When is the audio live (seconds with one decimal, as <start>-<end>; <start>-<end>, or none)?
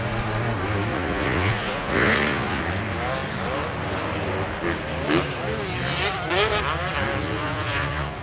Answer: 0.0-0.9; 2.6-7.2